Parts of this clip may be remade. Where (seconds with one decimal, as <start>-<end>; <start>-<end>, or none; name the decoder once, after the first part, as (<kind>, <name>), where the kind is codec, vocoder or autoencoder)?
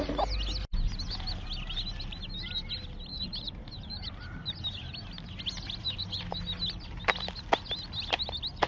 3.1-4.2 (vocoder, BigVGAN v2)